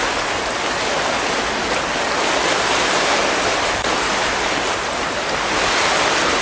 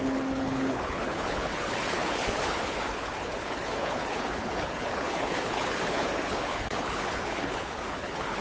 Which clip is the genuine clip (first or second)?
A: first